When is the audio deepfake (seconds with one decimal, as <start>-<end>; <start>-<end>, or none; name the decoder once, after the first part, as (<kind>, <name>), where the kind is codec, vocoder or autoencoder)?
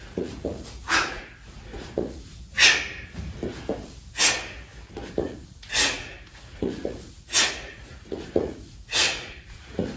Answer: 0.0-2.3 (vocoder, Vocos); 5.1-10.0